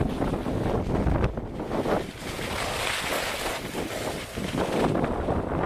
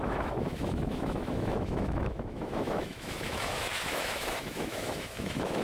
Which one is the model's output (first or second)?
second